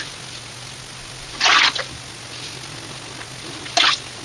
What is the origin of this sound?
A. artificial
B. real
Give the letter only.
B